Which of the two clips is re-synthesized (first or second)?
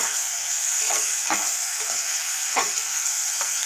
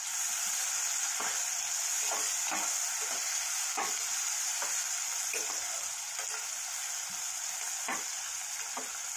first